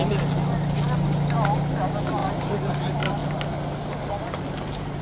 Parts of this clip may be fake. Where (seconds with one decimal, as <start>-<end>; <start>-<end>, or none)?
none